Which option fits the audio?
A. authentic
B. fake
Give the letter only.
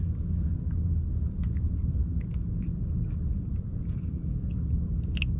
A